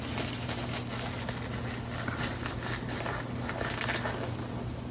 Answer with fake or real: real